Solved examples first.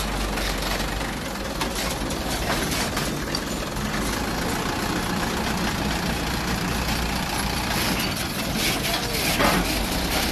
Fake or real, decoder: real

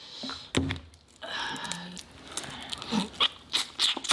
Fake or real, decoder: real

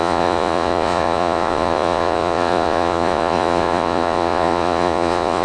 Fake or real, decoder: fake, vocoder, Vocos